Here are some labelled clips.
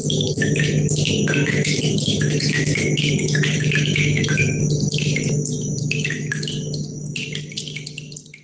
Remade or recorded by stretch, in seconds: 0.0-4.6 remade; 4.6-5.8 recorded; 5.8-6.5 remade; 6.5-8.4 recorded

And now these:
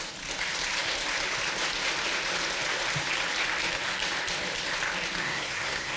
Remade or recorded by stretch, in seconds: 0.0-5.2 recorded; 5.2-6.0 remade

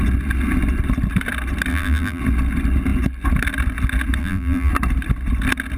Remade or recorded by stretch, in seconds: 0.0-1.7 recorded; 1.7-2.2 remade; 2.2-4.2 recorded; 4.2-4.7 remade; 4.7-5.8 recorded

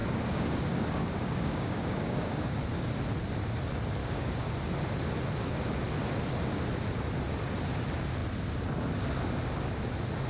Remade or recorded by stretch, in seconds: 0.0-2.6 remade; 2.6-4.0 recorded; 4.0-4.5 remade; 4.5-10.3 recorded

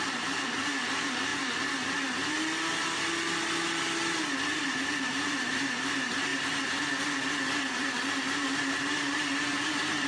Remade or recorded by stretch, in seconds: 0.0-1.3 remade; 1.3-4.6 recorded; 4.6-6.3 remade; 6.3-7.3 recorded; 7.3-10.1 remade